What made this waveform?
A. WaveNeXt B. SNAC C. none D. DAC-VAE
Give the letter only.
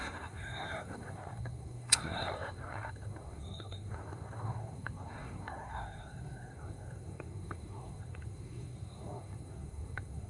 B